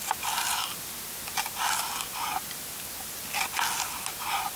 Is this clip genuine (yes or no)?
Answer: yes